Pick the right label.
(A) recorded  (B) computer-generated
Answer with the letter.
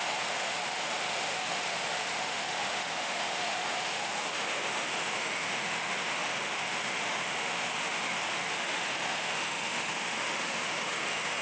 B